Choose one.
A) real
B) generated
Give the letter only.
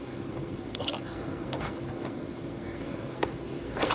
B